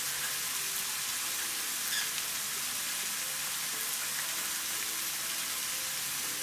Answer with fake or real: real